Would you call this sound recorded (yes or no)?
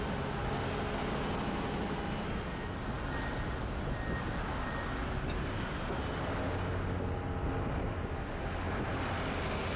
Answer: yes